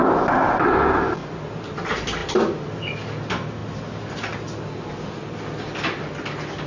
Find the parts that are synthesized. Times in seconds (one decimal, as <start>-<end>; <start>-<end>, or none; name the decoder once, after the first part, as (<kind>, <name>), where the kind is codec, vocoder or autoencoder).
none